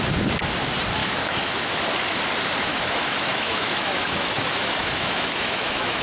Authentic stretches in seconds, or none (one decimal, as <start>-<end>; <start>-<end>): 0.0-1.0; 1.8-2.7